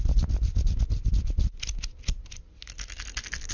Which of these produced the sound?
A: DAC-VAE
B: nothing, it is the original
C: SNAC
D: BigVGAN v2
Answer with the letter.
B